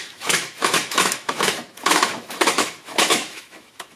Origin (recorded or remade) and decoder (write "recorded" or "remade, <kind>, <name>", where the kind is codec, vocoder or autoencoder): remade, autoencoder, DAC-VAE